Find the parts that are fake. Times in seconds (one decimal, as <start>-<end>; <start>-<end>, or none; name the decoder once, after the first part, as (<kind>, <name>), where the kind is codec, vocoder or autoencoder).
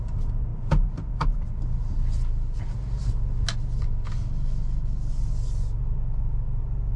none